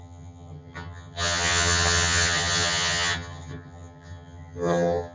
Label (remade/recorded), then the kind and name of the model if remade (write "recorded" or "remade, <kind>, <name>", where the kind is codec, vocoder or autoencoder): remade, vocoder, HiFi-GAN